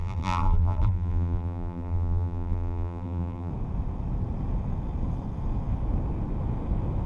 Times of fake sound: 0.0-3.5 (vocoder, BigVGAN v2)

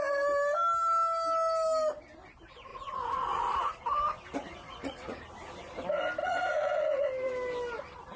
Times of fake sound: 2.7-3.8 (vocoder, Vocos); 4.4-5.2; 6.2-7.0

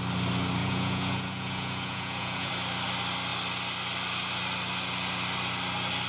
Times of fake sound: 0.6-2.5 (vocoder, Vocos)

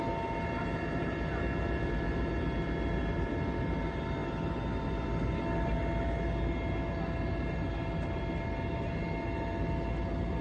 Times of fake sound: none

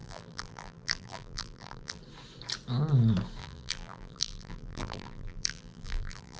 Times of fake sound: 0.0-2.0 (vocoder, BigVGAN v2); 3.4-6.4

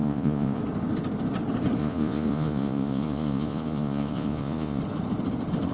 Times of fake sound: 0.0-0.6 (vocoder, Vocos); 1.8-4.8

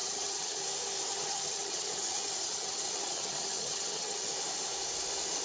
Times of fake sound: 0.0-0.6 (vocoder, HiFi-GAN); 1.1-4.3

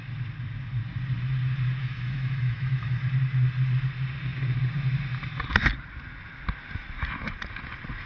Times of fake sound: 1.8-3.0 (autoencoder, DAC-VAE)